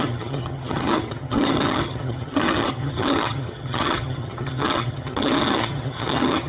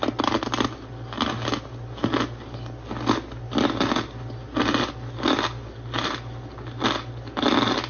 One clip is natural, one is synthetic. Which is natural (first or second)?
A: second